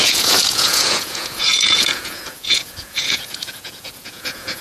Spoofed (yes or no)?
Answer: yes